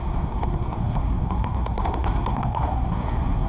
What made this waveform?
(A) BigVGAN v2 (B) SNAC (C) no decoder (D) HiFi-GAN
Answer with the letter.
B